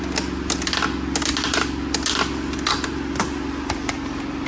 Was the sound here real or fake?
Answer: real